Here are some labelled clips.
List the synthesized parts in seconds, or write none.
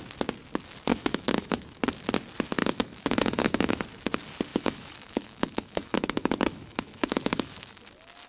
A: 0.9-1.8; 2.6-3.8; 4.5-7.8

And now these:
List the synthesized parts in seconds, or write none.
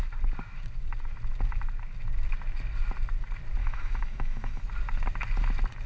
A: 3.6-4.6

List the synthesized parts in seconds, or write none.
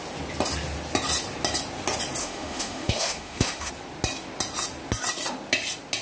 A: 2.2-3.7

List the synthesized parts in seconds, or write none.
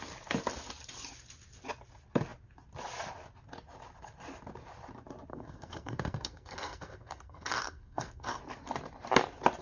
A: 5.3-8.4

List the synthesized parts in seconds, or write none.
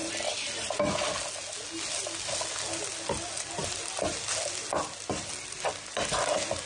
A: none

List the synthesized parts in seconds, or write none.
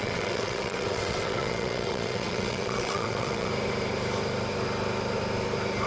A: 0.0-3.5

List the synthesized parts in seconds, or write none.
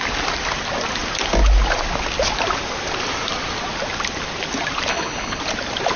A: 4.9-5.4